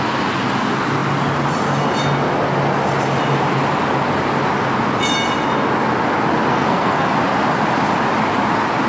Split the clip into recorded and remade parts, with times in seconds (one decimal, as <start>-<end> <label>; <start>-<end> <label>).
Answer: 0.0-6.5 recorded; 6.5-7.1 remade; 7.1-8.9 recorded